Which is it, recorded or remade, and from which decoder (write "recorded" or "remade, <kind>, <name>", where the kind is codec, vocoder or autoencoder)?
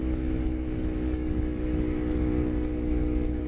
remade, codec, DAC